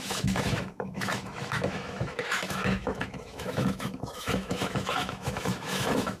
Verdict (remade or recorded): remade